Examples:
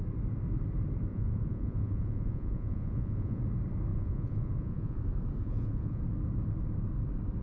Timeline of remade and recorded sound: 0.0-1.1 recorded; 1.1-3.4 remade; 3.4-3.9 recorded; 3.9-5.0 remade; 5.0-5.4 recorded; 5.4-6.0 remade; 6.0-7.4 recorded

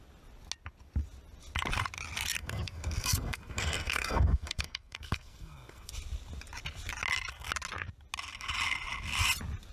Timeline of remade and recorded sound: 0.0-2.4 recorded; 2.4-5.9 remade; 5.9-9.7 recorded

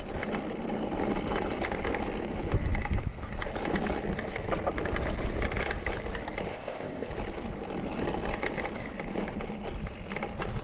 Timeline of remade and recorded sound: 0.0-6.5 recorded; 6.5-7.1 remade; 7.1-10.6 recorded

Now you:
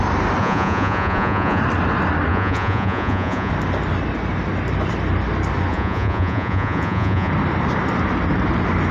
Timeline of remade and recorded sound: 0.0-0.4 recorded; 0.4-1.6 remade; 1.6-2.3 recorded; 2.3-3.5 remade; 3.5-5.7 recorded; 5.7-7.3 remade; 7.3-8.9 recorded